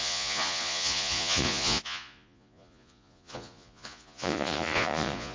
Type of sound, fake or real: fake